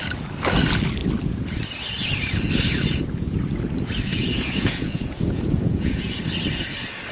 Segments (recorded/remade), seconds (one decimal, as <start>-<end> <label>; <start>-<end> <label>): 0.0-4.1 recorded; 4.1-6.2 remade; 6.2-7.1 recorded